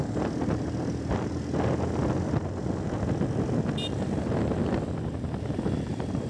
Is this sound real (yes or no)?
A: yes